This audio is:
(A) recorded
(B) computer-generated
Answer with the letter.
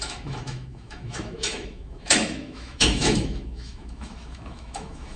B